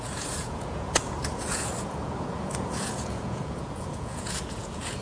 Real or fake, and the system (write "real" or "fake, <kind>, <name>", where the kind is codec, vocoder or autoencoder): fake, vocoder, Vocos